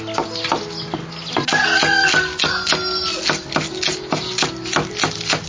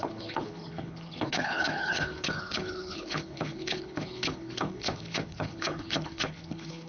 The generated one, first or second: second